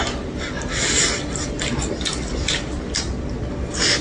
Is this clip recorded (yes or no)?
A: yes